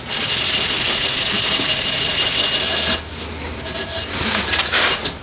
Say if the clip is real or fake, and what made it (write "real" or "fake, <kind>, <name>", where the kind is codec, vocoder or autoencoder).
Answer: real